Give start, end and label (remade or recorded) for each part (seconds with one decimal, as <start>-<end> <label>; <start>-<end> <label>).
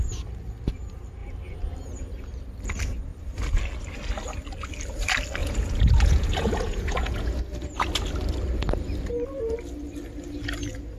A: 0.0-5.4 recorded; 5.4-7.3 remade; 7.3-11.0 recorded